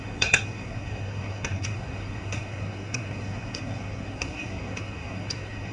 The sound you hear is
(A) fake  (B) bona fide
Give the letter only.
A